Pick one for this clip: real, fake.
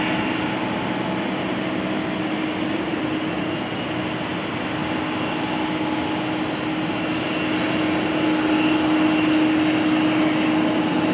real